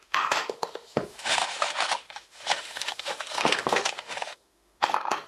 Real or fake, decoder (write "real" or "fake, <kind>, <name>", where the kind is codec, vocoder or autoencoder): fake, autoencoder, DAC-VAE